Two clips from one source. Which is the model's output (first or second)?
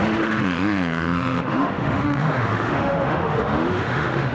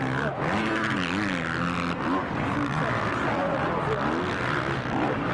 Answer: first